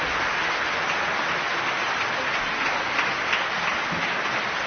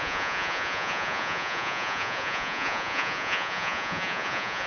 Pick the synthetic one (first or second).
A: second